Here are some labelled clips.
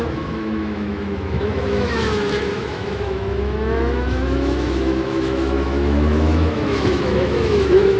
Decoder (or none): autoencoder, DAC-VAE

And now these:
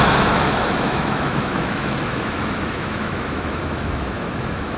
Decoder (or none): autoencoder, DAC-VAE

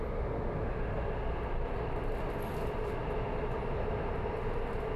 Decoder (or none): none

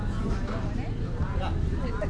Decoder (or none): none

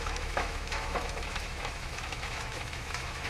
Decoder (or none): autoencoder, DAC-VAE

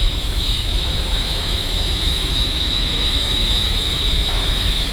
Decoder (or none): autoencoder, DAC-VAE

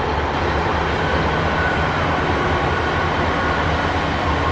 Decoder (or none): none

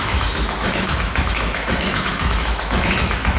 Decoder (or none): autoencoder, DAC-VAE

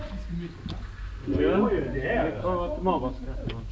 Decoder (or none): none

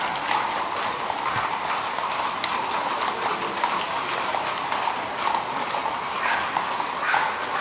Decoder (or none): none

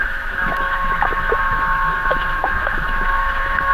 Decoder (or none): autoencoder, DAC-VAE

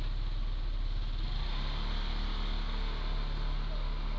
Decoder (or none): none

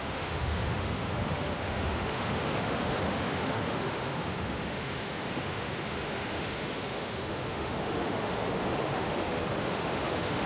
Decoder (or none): autoencoder, DAC-VAE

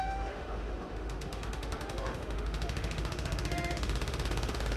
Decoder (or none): autoencoder, DAC-VAE